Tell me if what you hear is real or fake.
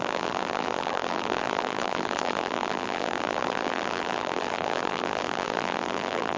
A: fake